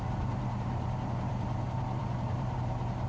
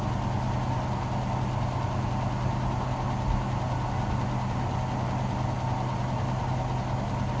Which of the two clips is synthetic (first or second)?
first